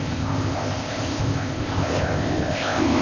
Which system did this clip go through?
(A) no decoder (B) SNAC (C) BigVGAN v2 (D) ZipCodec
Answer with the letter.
D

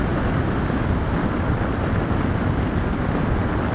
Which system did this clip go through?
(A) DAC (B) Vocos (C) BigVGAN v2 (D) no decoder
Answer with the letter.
D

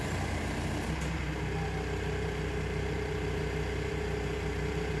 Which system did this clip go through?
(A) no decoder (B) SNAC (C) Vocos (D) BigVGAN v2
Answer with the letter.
D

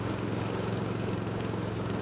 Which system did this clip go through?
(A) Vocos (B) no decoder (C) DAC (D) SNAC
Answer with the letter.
C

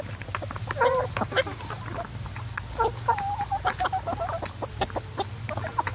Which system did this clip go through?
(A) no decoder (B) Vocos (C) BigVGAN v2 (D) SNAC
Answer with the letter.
A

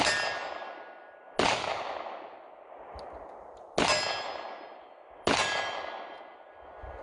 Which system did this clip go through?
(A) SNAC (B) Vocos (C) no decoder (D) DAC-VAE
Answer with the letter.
C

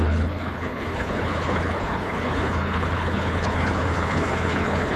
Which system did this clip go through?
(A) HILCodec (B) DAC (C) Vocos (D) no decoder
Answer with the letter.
A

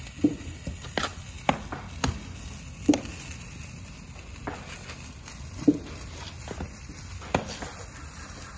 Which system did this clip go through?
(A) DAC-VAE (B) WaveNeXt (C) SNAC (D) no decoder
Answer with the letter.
D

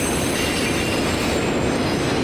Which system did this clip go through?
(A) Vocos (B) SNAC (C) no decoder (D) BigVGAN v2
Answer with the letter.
C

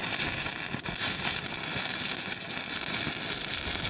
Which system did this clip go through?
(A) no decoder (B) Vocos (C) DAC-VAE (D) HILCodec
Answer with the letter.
A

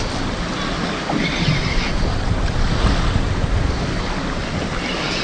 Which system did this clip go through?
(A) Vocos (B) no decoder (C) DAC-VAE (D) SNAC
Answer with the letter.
B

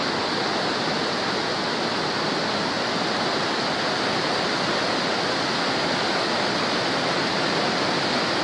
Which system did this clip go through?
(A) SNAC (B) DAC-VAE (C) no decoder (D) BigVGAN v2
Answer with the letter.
C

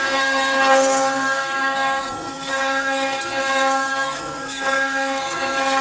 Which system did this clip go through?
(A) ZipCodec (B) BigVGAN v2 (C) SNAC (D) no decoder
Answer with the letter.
C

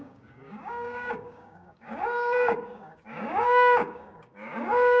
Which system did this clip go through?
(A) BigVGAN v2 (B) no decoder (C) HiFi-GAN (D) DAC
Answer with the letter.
D